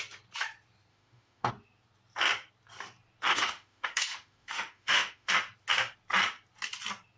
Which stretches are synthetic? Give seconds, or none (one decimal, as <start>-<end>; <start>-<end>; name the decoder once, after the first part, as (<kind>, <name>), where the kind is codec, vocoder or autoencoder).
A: 0.9-1.5 (autoencoder, DAC-VAE); 3.3-5.3